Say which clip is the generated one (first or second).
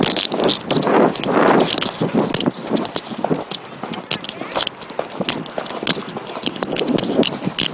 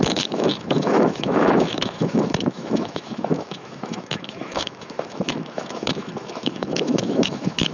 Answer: second